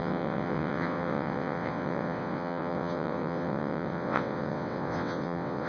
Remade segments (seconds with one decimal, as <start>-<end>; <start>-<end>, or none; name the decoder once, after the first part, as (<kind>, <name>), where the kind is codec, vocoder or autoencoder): 0.0-5.7 (vocoder, WaveNeXt)